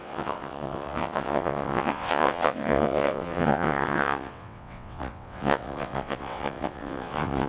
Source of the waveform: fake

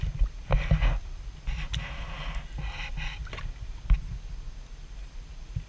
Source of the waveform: real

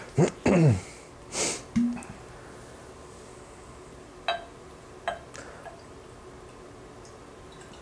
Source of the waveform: real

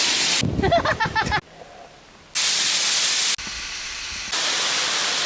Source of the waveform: real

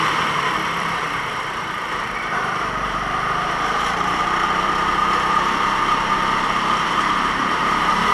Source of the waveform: fake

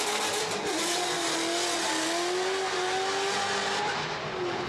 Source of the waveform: real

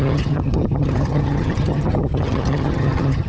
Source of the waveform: fake